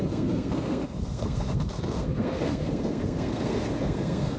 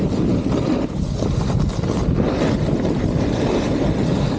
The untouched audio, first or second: second